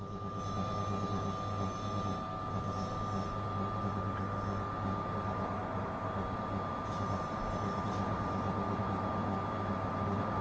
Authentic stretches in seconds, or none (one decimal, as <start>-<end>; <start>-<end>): 0.0-10.4